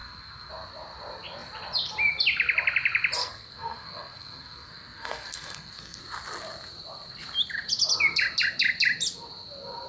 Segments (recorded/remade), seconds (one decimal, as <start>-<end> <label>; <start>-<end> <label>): 0.0-0.5 remade; 0.5-3.2 recorded; 3.2-6.0 remade; 6.0-9.9 recorded